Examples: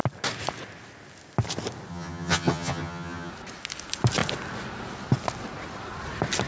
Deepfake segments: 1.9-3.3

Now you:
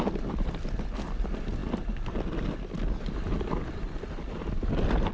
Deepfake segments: none

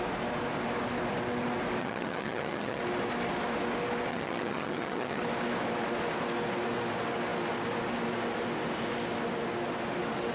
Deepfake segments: 1.8-2.8; 4.1-5.2

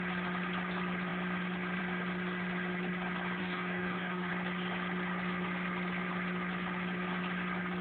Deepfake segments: 3.4-4.3